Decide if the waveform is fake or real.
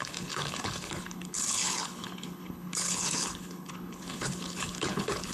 fake